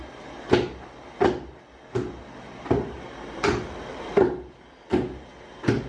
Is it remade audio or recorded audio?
recorded